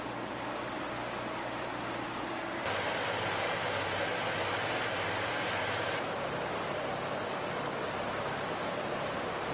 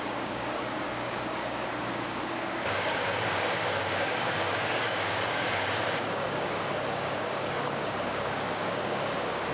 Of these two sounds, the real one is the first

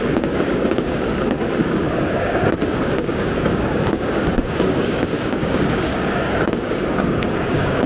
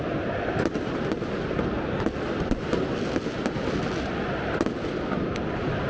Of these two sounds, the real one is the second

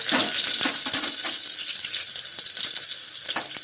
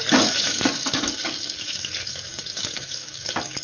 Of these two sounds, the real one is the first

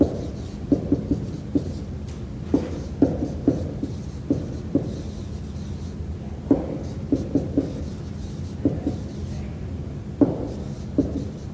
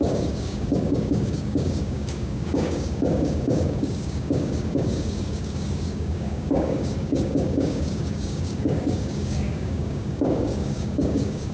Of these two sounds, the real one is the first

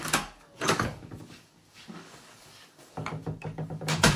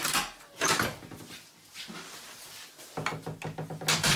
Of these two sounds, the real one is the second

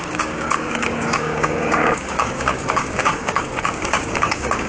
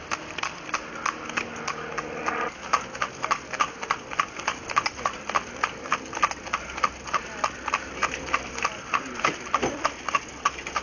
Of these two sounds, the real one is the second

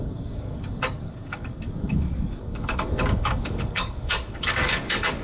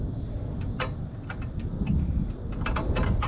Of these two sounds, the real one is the second